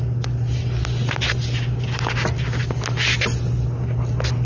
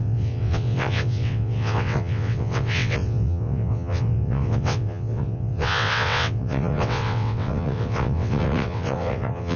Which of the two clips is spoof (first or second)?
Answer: second